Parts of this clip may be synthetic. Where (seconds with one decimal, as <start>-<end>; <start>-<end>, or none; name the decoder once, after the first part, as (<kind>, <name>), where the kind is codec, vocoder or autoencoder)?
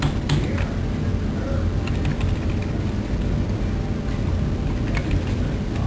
none